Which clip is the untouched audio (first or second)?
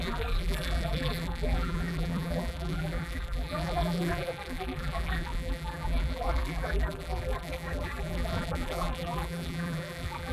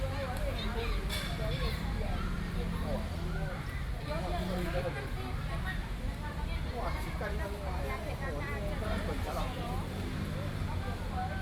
second